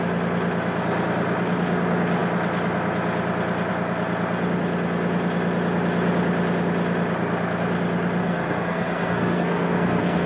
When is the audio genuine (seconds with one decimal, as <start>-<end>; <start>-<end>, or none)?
0.0-8.2